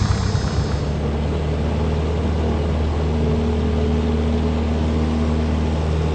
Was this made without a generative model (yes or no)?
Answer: yes